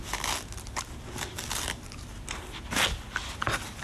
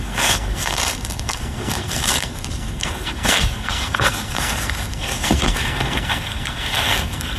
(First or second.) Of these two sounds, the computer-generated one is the second